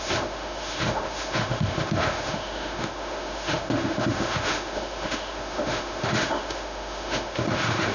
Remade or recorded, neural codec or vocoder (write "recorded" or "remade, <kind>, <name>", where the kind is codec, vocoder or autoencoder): remade, autoencoder, DAC-VAE